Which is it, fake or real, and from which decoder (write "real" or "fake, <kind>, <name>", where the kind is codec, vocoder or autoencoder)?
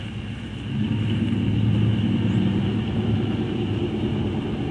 real